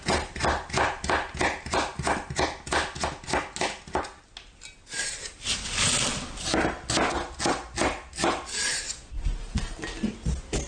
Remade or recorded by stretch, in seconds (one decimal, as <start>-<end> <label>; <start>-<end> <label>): 0.0-10.7 recorded